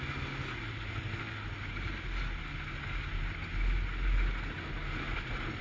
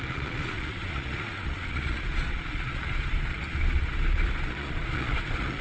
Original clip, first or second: first